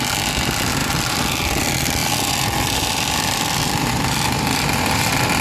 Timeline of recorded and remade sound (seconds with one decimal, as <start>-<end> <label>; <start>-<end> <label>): 0.0-0.8 recorded; 0.8-1.6 remade; 1.6-2.0 recorded; 2.0-5.4 remade